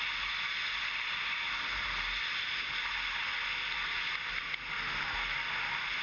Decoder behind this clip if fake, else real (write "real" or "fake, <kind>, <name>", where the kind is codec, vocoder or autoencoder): real